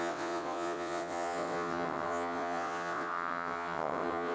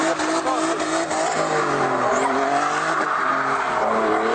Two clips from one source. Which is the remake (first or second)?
first